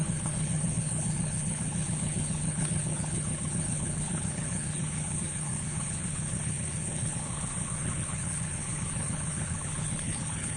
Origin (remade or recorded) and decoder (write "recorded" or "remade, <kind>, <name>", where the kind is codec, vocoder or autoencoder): remade, codec, HILCodec